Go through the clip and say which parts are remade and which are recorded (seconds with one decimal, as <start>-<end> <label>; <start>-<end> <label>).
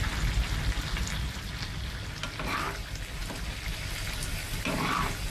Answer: 0.0-5.3 recorded